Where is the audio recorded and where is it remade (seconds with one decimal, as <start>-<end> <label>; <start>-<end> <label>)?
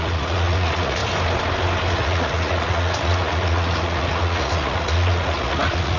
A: 0.0-1.0 remade; 1.0-1.9 recorded; 1.9-6.0 remade